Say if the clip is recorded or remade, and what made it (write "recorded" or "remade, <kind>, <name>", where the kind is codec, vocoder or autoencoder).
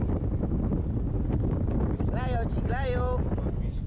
recorded